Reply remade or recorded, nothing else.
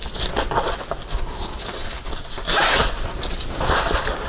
recorded